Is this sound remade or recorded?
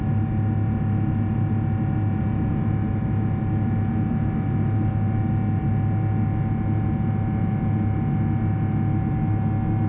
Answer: recorded